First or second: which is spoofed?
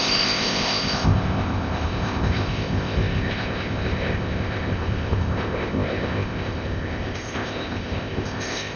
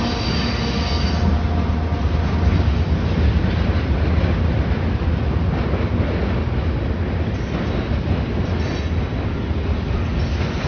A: first